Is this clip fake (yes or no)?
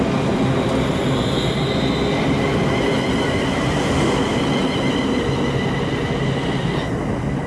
no